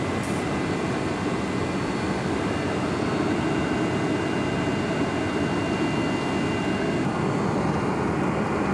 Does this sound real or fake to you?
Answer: real